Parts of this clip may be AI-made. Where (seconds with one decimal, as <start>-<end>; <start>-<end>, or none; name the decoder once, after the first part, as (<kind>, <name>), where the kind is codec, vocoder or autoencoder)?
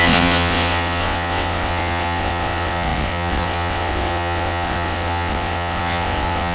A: 0.0-6.5 (vocoder, WaveNeXt)